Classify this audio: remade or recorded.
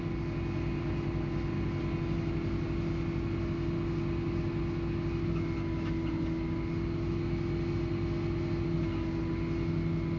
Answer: recorded